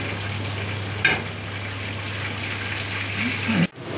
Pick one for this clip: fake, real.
real